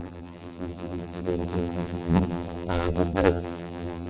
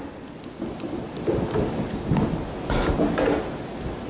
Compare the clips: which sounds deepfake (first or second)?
first